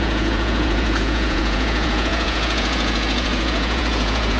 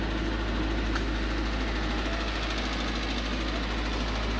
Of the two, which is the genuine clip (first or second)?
second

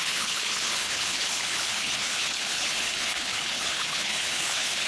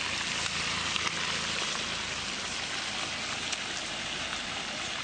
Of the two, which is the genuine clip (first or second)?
second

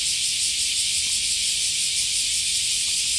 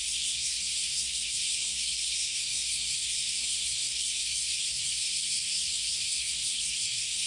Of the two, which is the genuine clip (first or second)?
first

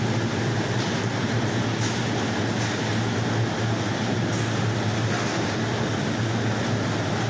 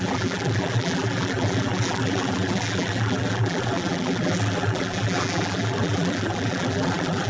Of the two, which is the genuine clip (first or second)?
first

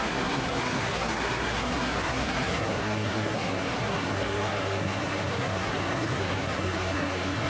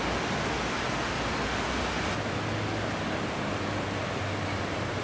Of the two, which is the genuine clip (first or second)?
second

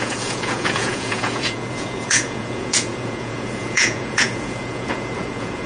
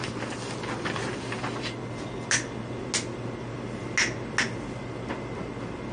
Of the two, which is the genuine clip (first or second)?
second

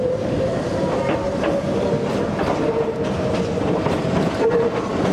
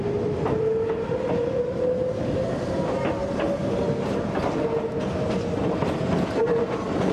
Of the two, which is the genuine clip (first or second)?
second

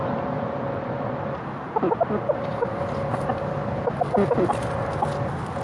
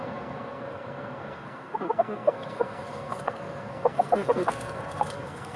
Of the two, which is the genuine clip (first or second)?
first